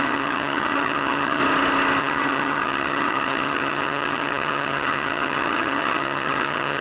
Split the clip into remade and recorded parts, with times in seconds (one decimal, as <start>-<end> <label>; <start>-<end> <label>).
0.0-1.4 remade; 1.4-2.0 recorded; 2.0-6.8 remade